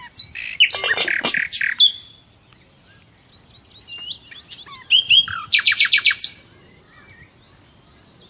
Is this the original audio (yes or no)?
yes